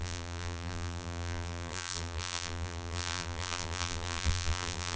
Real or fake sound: fake